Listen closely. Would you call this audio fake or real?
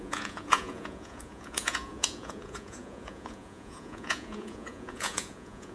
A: fake